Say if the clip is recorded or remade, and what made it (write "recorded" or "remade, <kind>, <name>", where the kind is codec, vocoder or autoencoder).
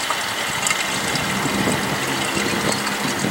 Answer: recorded